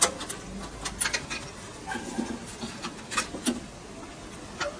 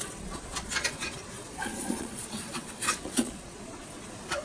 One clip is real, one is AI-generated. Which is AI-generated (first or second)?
second